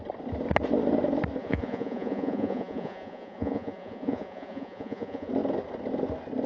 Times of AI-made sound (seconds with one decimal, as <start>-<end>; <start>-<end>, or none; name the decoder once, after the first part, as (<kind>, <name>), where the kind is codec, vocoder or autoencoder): 1.4-5.3 (vocoder, Vocos)

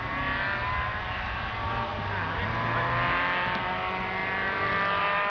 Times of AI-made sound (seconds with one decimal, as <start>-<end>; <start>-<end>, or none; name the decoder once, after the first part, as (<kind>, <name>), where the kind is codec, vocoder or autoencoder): none